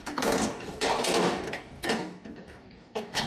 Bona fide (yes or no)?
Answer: no